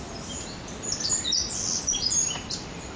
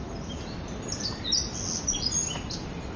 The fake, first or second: first